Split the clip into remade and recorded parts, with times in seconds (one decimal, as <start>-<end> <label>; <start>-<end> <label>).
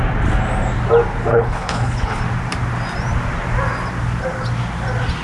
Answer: 0.0-1.3 recorded; 1.3-2.2 remade; 2.2-5.2 recorded